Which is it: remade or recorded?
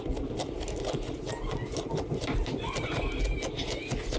recorded